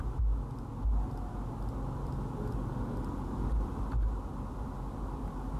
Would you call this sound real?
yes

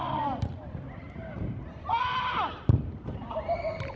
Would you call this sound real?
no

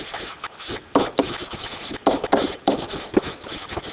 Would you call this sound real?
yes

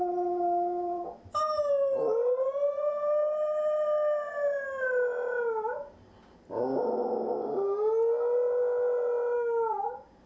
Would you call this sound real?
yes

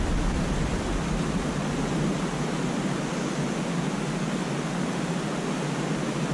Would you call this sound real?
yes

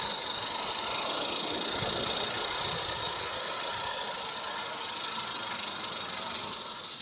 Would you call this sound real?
yes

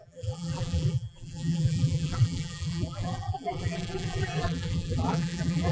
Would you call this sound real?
no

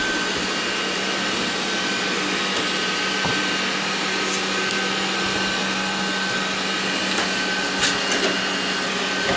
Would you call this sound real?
yes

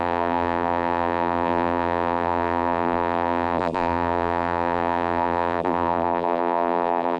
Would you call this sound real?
no